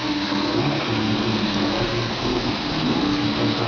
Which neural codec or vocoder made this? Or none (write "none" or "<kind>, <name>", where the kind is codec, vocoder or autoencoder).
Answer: codec, SNAC